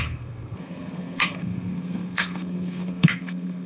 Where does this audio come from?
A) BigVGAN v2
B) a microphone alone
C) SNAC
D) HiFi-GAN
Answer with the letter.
C